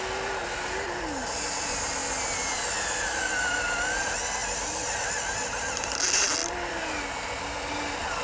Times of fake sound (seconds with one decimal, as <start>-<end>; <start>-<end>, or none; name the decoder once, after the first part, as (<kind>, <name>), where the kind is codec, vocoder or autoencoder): 0.0-2.0 (vocoder, BigVGAN v2); 4.0-4.4; 5.7-8.2